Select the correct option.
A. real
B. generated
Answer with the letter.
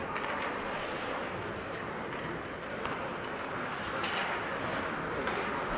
A